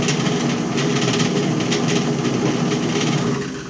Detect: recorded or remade recorded